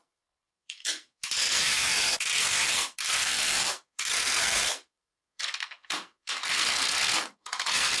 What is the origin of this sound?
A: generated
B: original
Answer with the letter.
A